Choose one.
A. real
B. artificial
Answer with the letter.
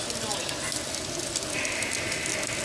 A